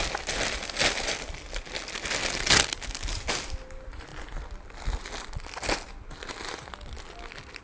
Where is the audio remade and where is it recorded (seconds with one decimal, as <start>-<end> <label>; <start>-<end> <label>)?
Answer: 0.0-7.6 recorded